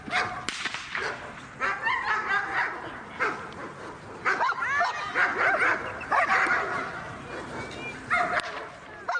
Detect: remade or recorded recorded